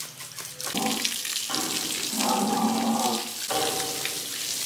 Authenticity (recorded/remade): recorded